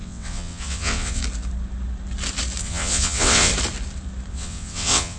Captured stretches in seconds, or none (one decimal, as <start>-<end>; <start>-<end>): 1.2-2.6; 3.5-4.3